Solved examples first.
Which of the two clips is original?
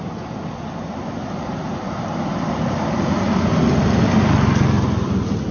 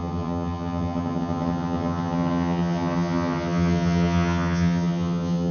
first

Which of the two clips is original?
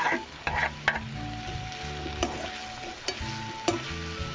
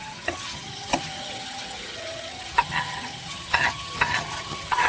first